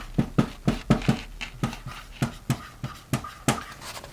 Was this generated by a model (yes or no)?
no